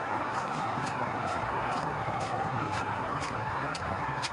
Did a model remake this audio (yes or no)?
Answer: yes